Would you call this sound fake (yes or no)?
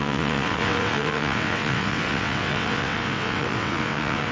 yes